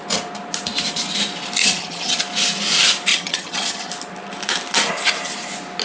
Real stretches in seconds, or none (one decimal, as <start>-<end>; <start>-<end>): 0.0-1.6; 2.2-3.1; 3.9-5.8